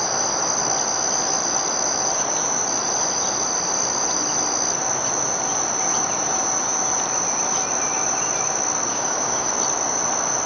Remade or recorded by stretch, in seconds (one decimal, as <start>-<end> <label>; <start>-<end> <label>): 0.0-8.9 recorded; 8.9-9.5 remade; 9.5-10.5 recorded